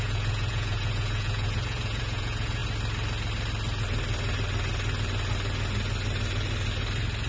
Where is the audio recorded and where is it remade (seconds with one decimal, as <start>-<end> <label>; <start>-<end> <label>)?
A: 0.0-2.6 remade; 2.6-7.3 recorded